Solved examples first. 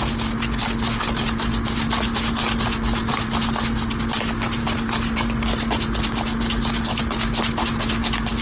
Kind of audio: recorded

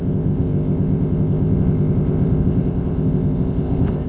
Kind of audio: remade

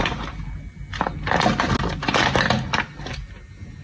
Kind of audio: recorded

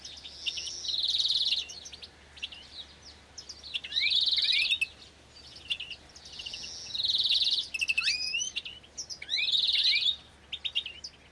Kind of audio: recorded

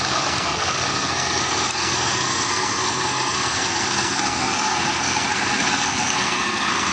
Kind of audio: remade